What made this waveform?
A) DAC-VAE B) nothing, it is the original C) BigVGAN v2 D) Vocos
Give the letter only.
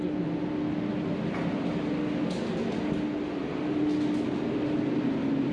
B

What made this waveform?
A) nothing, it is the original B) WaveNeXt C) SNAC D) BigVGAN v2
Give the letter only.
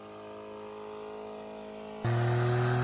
A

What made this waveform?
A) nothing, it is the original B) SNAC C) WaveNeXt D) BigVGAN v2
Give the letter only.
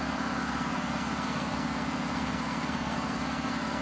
B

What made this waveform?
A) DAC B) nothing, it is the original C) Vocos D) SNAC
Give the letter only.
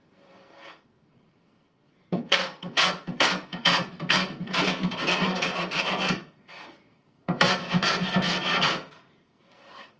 D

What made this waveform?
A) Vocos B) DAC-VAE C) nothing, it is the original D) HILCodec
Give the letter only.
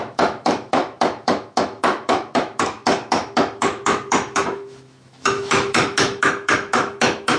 B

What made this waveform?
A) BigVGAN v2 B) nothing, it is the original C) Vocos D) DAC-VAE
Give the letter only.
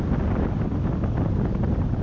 B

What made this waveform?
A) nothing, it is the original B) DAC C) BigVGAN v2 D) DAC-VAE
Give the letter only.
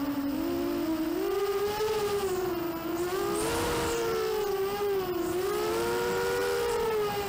A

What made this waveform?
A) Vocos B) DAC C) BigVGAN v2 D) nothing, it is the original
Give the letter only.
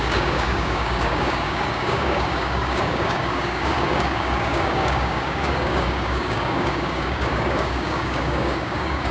B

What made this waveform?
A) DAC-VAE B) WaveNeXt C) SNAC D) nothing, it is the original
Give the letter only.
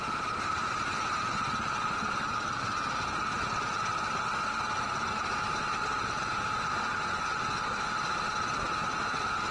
D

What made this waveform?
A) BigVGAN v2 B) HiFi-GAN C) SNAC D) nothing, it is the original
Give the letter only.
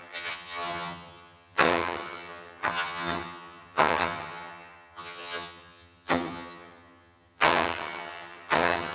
B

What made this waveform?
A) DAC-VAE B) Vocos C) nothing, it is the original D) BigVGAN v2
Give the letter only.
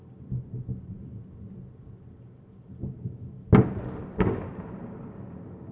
C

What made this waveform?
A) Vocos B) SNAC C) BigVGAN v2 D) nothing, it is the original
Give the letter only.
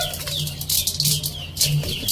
D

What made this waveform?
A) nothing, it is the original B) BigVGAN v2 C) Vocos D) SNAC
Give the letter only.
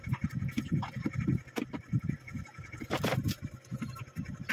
A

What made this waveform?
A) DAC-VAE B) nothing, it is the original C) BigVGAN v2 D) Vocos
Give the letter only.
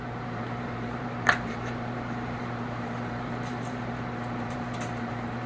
C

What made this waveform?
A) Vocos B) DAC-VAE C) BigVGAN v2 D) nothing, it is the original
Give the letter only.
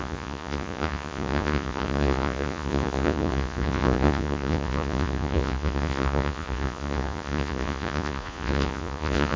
A